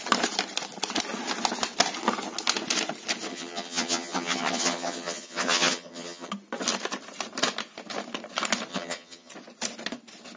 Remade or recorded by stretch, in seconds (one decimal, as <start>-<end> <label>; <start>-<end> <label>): 0.0-3.3 recorded; 3.3-6.3 remade; 6.3-8.7 recorded; 8.7-9.3 remade; 9.3-10.4 recorded